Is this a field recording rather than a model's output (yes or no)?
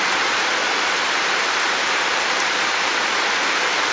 no